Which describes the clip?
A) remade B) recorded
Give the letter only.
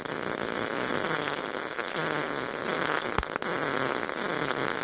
B